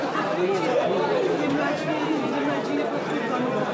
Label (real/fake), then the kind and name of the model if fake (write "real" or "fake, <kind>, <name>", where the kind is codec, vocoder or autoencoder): real